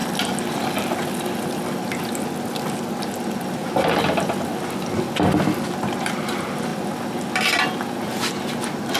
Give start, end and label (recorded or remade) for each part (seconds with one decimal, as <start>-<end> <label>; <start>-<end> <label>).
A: 0.0-9.0 recorded